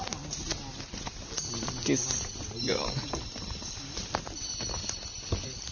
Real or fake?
real